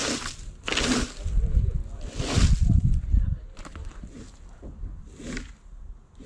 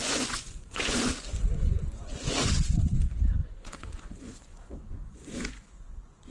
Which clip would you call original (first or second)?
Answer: first